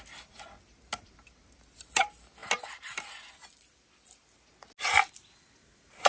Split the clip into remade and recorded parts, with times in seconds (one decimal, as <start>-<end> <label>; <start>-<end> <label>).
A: 0.0-6.1 recorded